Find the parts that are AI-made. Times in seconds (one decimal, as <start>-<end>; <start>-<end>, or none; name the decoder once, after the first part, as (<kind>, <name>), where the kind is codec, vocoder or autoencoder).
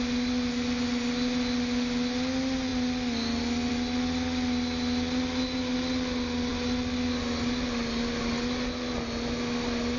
none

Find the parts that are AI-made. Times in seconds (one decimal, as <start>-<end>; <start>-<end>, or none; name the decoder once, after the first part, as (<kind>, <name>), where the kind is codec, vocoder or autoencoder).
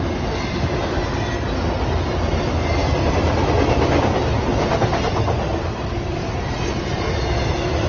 none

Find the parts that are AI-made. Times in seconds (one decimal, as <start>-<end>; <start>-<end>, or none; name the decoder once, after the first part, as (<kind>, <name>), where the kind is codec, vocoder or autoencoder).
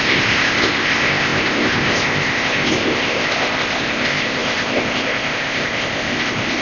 0.0-6.6 (codec, ZipCodec)